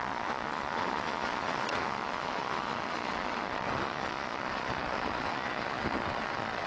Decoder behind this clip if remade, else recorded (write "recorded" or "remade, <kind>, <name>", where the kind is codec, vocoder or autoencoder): remade, vocoder, Vocos